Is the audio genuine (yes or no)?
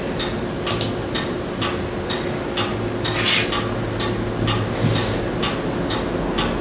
yes